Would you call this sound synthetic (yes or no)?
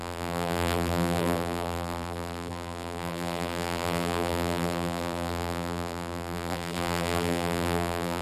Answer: yes